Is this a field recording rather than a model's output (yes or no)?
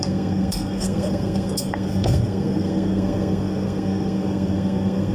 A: no